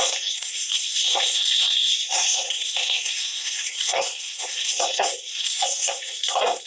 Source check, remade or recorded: remade